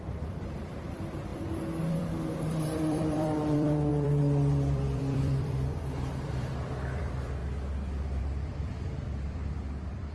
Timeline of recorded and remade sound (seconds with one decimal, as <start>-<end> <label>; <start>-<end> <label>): 0.0-1.3 remade; 1.3-1.9 recorded; 1.9-7.4 remade; 7.4-8.2 recorded; 8.2-10.1 remade